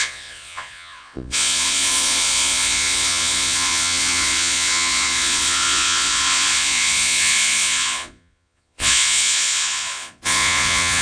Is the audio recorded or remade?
remade